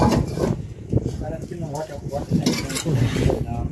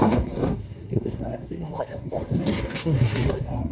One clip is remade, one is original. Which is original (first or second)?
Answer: first